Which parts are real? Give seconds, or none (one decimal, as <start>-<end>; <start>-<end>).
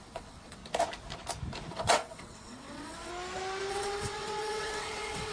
0.6-1.7; 3.1-3.7